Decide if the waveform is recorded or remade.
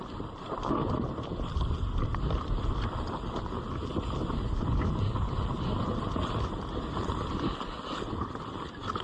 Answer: recorded